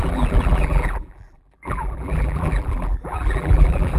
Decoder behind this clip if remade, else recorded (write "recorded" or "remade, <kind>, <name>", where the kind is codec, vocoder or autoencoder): remade, vocoder, BigVGAN v2